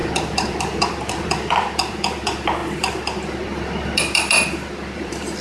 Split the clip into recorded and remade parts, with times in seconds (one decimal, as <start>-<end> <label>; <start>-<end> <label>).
0.0-5.4 remade